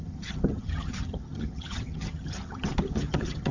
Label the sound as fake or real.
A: fake